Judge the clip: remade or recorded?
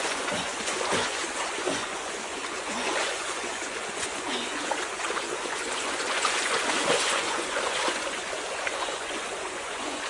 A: remade